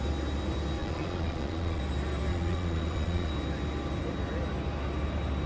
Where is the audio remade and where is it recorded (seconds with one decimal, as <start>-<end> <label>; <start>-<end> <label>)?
0.0-0.8 recorded; 0.8-1.8 remade; 1.8-2.3 recorded; 2.3-3.3 remade; 3.3-5.5 recorded